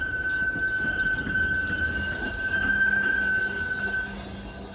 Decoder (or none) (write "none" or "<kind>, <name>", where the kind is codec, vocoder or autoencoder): none